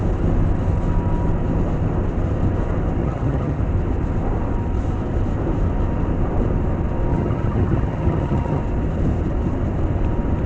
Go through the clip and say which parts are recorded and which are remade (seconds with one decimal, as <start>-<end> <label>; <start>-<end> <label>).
0.0-3.0 recorded; 3.0-3.6 remade; 3.6-7.1 recorded; 7.1-8.6 remade; 8.6-10.5 recorded